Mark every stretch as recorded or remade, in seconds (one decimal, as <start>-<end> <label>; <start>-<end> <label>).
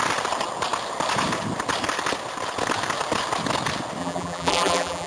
0.0-4.0 recorded; 4.0-5.1 remade